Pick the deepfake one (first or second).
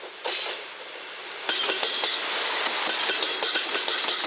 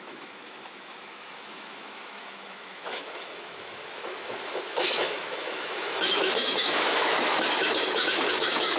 second